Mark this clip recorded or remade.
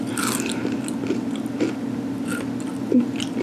recorded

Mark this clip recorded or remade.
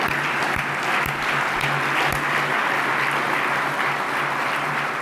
recorded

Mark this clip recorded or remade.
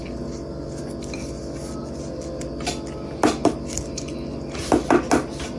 recorded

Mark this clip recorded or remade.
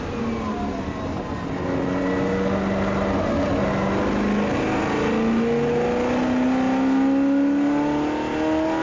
recorded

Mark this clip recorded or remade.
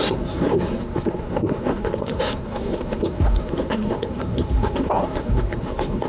remade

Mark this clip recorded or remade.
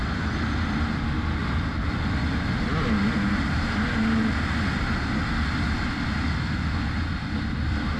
recorded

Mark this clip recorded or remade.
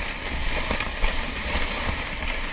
recorded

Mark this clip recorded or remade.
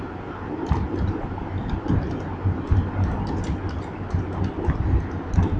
recorded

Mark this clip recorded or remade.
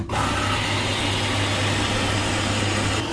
recorded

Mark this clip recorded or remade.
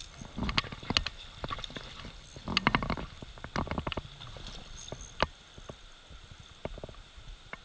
recorded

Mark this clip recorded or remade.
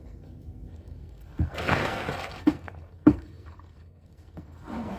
remade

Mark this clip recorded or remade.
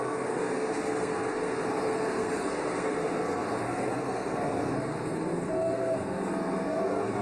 remade